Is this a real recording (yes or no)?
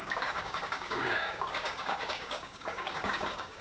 no